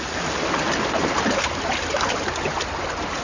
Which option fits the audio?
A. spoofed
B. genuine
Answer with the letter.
B